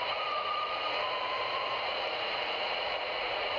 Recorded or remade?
remade